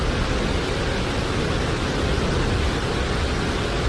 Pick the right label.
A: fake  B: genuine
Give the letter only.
B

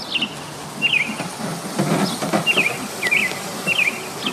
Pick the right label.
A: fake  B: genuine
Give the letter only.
B